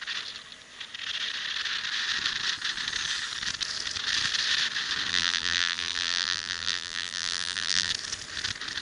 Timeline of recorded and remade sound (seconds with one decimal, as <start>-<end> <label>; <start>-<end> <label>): 0.0-5.1 recorded; 5.1-7.9 remade; 7.9-8.8 recorded